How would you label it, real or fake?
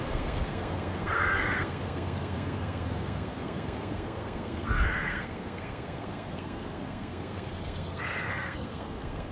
fake